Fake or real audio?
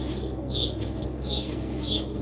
fake